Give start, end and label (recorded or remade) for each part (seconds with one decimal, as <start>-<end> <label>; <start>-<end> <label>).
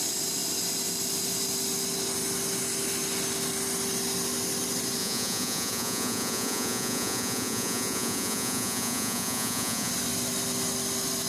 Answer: 0.0-5.0 recorded; 5.0-9.9 remade; 9.9-11.3 recorded